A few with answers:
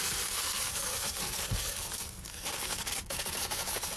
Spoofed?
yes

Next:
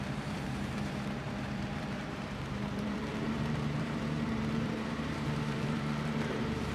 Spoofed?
yes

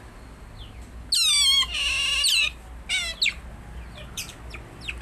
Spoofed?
no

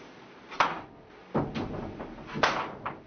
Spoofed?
no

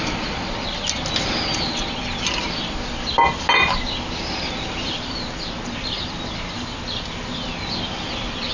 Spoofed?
no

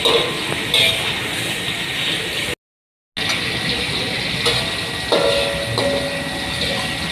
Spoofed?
no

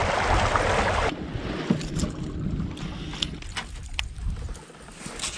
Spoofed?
no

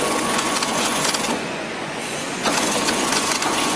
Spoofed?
yes